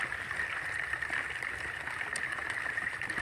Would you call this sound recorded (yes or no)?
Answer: yes